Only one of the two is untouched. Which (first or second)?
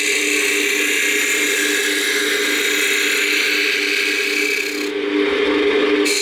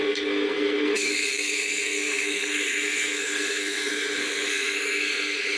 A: first